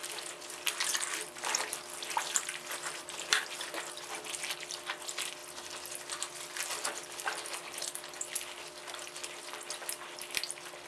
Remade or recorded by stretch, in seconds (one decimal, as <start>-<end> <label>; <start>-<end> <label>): 0.0-10.9 recorded